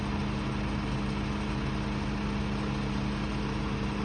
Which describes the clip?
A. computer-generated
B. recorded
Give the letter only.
B